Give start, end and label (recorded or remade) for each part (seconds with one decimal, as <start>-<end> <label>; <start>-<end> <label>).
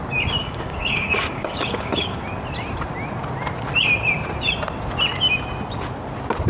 0.0-0.4 recorded; 0.4-2.2 remade; 2.2-6.5 recorded